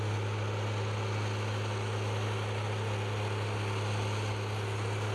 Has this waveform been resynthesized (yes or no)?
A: no